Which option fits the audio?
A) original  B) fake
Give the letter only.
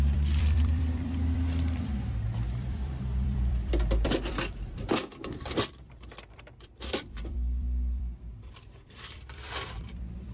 B